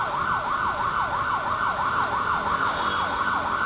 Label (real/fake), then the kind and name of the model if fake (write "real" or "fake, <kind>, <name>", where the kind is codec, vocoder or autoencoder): real